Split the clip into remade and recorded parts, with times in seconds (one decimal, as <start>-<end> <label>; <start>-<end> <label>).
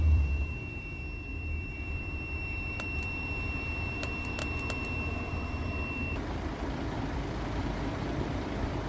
0.0-4.4 remade; 4.4-5.1 recorded; 5.1-8.9 remade